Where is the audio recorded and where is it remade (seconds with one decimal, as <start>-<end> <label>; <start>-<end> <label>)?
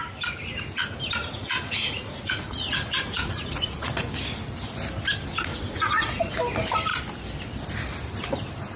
0.0-1.2 recorded; 1.2-3.9 remade; 3.9-5.5 recorded; 5.5-6.2 remade; 6.2-8.8 recorded